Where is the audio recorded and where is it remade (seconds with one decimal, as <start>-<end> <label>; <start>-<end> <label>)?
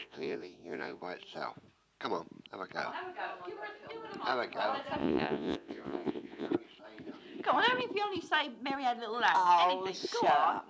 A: 0.0-1.0 remade; 1.0-5.0 recorded; 5.0-6.5 remade; 6.5-10.7 recorded